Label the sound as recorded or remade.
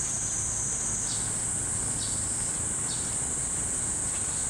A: recorded